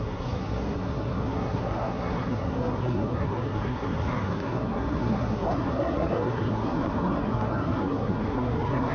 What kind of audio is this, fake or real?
fake